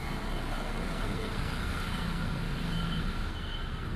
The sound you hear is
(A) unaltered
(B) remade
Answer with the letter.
B